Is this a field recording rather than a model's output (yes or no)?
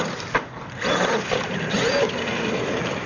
yes